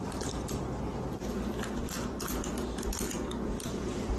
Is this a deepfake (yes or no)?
yes